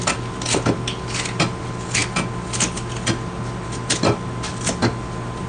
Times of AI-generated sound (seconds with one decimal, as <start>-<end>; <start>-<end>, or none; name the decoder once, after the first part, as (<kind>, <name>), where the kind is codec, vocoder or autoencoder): none